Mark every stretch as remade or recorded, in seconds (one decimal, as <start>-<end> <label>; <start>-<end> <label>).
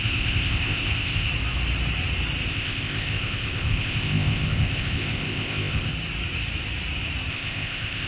0.0-1.3 remade; 1.3-2.5 recorded; 2.5-5.9 remade; 5.9-7.3 recorded; 7.3-8.1 remade